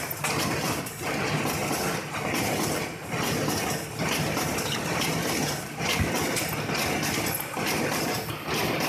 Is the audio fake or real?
real